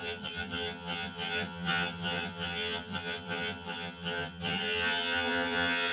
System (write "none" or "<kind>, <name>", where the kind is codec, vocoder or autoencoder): vocoder, HiFi-GAN